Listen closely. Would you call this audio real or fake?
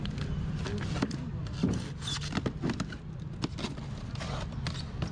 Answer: real